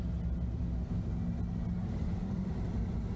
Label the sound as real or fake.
real